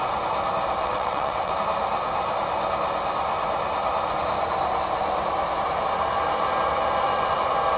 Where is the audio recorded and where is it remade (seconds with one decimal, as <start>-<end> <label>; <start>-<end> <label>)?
0.0-0.8 recorded; 0.8-1.5 remade; 1.5-7.8 recorded